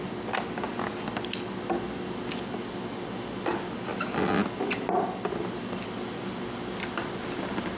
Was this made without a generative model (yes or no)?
yes